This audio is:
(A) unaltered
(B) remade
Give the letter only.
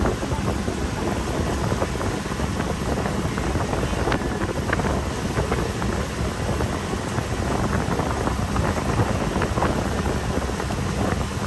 A